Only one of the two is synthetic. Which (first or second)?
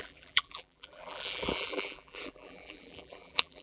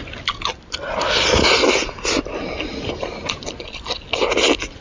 first